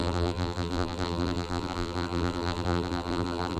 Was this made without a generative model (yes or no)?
no